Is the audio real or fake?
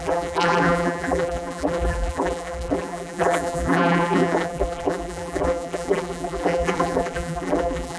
fake